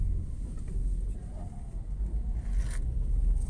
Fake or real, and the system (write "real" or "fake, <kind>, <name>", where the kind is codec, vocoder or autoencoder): real